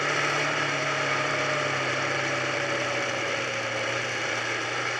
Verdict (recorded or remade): remade